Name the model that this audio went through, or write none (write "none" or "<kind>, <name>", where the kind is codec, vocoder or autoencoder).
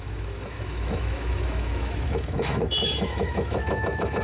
autoencoder, DAC-VAE